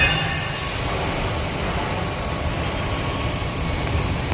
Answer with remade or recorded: recorded